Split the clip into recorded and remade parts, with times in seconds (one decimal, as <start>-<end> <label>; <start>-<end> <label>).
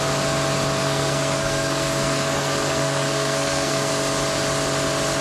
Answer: 0.0-0.8 recorded; 0.8-3.9 remade; 3.9-5.2 recorded